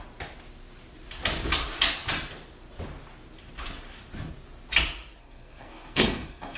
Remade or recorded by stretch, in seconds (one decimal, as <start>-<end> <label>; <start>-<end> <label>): 0.0-5.2 recorded; 5.2-6.6 remade